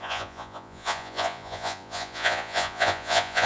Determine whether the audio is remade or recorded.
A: remade